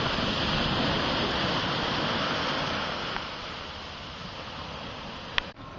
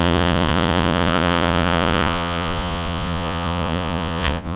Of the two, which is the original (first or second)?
first